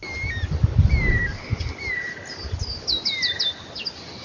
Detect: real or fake real